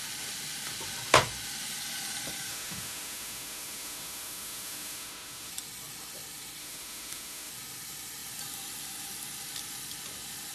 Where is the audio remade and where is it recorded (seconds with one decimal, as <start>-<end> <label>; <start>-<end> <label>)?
0.0-2.5 recorded; 2.5-5.5 remade; 5.5-6.6 recorded; 6.6-7.5 remade; 7.5-10.5 recorded